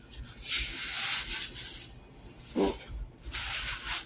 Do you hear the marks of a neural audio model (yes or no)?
no